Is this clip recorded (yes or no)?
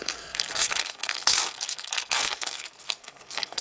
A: no